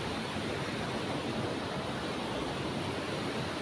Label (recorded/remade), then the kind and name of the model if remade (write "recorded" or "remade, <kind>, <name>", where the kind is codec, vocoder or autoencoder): recorded